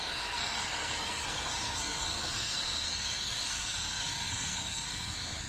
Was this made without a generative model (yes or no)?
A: no